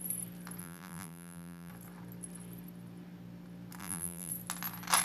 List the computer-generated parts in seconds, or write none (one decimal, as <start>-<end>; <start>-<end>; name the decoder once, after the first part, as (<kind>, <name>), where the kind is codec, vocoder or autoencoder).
0.6-1.7 (vocoder, BigVGAN v2); 3.8-4.3